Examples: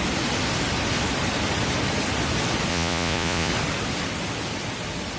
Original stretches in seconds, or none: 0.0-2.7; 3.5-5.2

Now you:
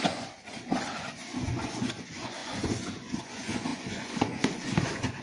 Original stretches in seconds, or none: none

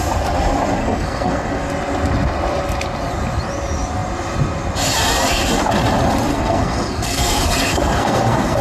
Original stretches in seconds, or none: 0.0-0.8; 1.7-6.3

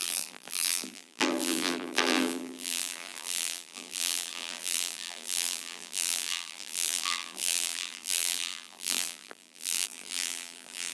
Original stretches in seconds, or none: none

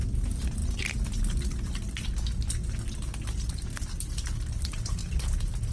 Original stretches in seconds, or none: 0.0-5.7